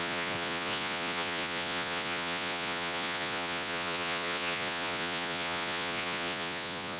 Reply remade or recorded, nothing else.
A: remade